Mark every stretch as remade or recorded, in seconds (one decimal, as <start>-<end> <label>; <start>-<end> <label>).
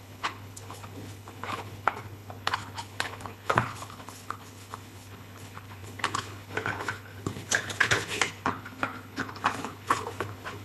0.0-10.6 remade